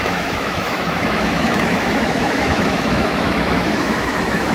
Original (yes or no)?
no